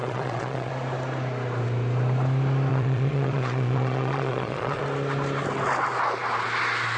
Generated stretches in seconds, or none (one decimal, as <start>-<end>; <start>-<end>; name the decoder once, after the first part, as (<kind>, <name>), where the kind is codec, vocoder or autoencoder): 0.0-0.7 (vocoder, Vocos); 2.7-4.8